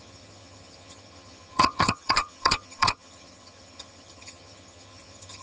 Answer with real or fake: fake